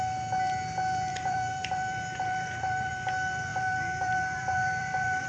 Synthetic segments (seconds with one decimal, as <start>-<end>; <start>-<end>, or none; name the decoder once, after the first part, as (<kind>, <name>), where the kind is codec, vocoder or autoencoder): 1.1-2.9 (vocoder, BigVGAN v2); 3.5-5.3